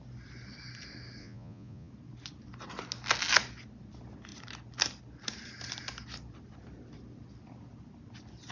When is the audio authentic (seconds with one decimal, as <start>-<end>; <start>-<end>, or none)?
0.0-1.2; 1.9-8.5